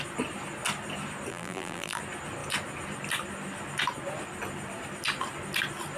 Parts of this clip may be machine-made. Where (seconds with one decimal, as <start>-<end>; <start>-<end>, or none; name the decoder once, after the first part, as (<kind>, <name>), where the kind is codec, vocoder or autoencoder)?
1.3-2.0 (vocoder, BigVGAN v2)